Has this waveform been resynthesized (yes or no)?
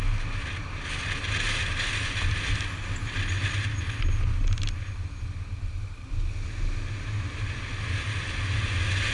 no